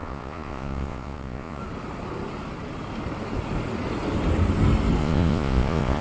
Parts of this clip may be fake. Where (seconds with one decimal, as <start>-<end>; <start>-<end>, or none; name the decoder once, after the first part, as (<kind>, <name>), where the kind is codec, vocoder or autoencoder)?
0.0-1.6 (vocoder, Vocos); 5.0-6.0